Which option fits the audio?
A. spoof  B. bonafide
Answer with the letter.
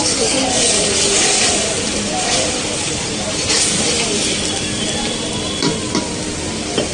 B